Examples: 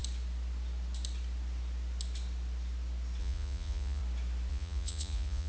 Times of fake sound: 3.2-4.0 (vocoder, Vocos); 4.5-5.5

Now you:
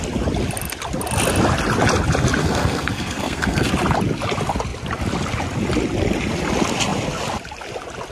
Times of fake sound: 2.4-3.7 (codec, SNAC)

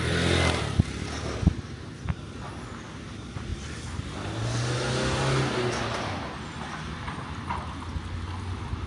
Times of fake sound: none

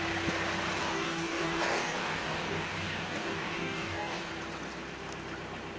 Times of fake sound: 0.8-4.3 (codec, DAC)

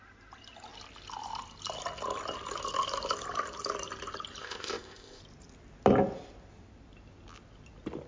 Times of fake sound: 4.4-5.2 (codec, ZipCodec)

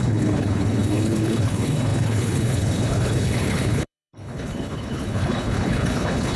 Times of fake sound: 0.0-6.4 (codec, HILCodec)

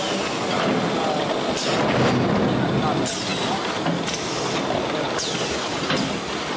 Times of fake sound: none